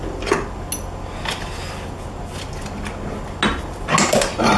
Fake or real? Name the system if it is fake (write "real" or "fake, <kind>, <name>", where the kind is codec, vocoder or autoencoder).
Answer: real